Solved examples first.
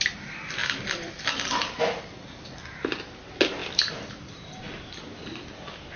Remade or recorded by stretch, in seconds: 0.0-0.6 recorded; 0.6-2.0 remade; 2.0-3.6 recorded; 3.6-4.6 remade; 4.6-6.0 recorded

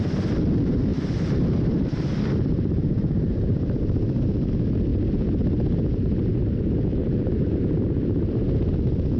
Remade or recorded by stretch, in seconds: 0.0-0.9 recorded; 0.9-4.5 remade; 4.5-6.9 recorded; 6.9-8.7 remade; 8.7-9.2 recorded

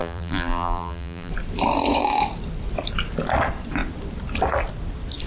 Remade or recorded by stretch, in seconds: 0.0-1.3 remade; 1.3-5.3 recorded

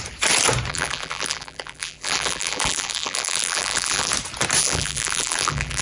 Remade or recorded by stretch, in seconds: 0.0-0.7 recorded; 0.7-4.1 remade; 4.1-4.6 recorded; 4.6-5.8 remade

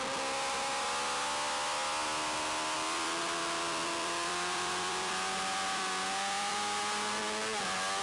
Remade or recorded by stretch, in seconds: 0.0-2.0 recorded; 2.0-6.8 remade; 6.8-8.0 recorded